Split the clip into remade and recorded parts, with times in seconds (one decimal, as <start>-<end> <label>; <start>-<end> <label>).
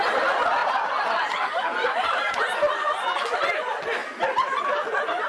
0.0-0.6 recorded; 0.6-2.4 remade; 2.4-5.3 recorded